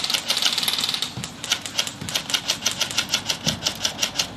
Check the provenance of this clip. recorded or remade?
recorded